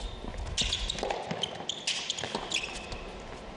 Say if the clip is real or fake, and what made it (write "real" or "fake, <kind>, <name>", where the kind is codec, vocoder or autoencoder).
real